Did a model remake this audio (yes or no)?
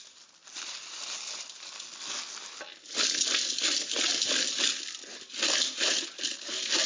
no